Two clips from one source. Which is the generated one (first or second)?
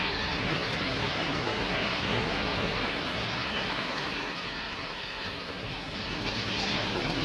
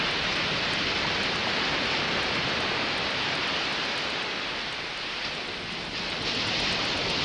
first